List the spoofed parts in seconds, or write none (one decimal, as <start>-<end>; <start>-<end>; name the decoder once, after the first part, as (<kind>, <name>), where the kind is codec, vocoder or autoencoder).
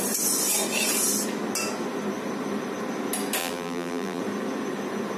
3.4-4.2 (vocoder, BigVGAN v2)